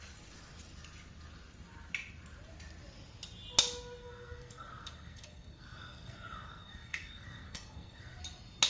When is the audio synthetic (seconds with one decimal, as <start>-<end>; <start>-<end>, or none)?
4.0-8.2